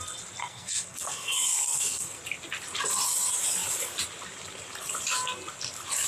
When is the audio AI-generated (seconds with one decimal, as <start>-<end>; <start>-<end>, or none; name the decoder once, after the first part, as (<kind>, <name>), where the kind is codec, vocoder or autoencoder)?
0.4-2.2 (codec, SNAC)